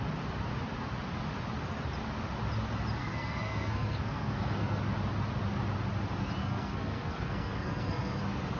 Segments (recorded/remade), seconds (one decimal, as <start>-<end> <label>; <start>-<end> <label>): 0.0-3.0 recorded; 3.0-4.8 remade; 4.8-6.4 recorded; 6.4-8.2 remade; 8.2-8.6 recorded

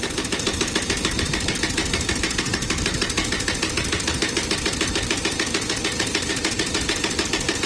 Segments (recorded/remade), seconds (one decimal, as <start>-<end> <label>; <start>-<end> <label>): 0.0-7.7 remade

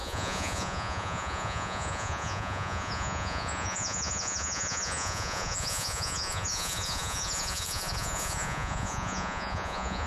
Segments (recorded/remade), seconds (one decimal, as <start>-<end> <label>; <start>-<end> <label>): 0.0-10.1 remade

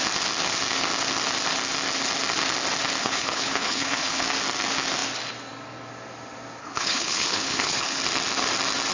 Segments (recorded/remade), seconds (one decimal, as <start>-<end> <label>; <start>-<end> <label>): 0.0-3.0 recorded; 3.0-4.2 remade; 4.2-6.6 recorded; 6.6-8.0 remade; 8.0-8.9 recorded

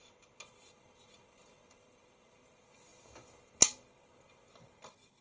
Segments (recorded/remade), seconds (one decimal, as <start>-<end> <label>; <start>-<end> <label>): 0.0-5.2 recorded